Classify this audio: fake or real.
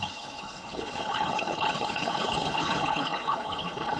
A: fake